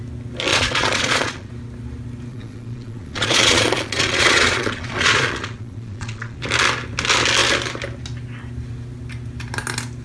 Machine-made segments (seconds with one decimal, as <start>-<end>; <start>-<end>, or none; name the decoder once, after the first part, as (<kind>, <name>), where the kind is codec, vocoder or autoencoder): 0.5-1.5 (vocoder, Vocos); 2.3-6.4